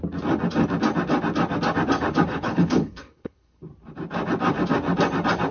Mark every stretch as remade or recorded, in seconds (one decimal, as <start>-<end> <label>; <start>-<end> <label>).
0.0-2.3 recorded; 2.3-3.7 remade; 3.7-5.5 recorded